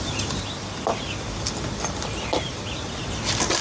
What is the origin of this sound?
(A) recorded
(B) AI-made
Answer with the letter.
A